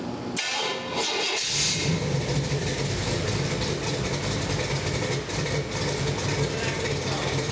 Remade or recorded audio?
recorded